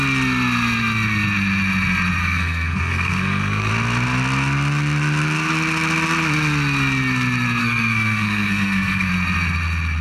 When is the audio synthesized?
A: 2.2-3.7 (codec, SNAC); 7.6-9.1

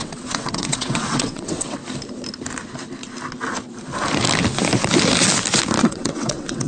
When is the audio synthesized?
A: 0.0-1.8 (vocoder, WaveNeXt); 5.8-6.7

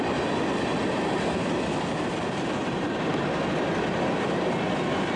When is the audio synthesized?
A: 0.0-0.7 (vocoder, BigVGAN v2); 3.8-5.2

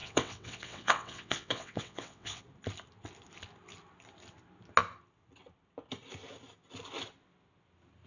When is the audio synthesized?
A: 0.0-2.4 (vocoder, WaveNeXt)

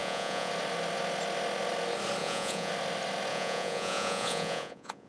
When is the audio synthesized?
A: 0.0-0.5 (vocoder, Vocos); 2.2-2.7; 3.3-5.1